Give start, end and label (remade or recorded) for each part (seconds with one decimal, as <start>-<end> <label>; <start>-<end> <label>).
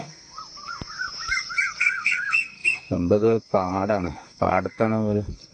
0.0-0.4 remade; 0.4-1.8 recorded; 1.8-5.5 remade